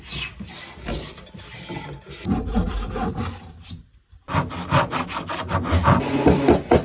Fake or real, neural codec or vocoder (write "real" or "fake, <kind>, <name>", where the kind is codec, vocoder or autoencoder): real